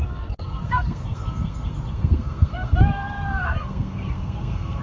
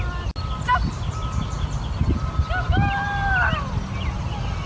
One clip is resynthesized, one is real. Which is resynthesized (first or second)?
first